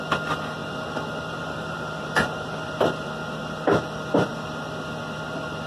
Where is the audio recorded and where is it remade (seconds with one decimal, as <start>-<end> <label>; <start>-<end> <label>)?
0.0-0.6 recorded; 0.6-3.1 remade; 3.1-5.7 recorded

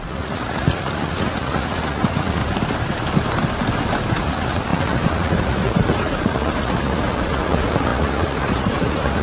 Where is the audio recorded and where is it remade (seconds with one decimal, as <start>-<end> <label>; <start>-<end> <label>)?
0.0-2.4 remade; 2.4-4.1 recorded; 4.1-9.2 remade

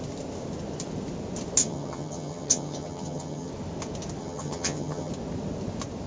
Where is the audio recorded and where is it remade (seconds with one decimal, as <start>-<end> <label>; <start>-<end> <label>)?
0.0-1.6 recorded; 1.6-3.5 remade; 3.5-4.2 recorded; 4.2-5.1 remade; 5.1-6.1 recorded